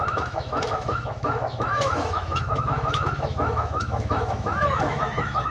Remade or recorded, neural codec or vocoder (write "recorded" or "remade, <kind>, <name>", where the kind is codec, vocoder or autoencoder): remade, autoencoder, DAC-VAE